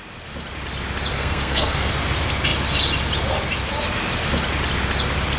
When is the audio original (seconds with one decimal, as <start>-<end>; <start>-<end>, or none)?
0.0-1.1; 1.9-5.4